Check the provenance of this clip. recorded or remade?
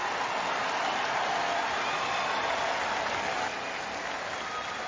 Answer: recorded